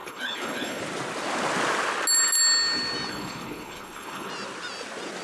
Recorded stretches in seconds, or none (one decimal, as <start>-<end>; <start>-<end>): 0.8-3.1; 4.3-5.2